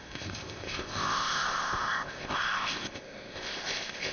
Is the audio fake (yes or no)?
yes